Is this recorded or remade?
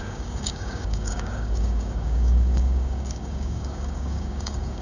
remade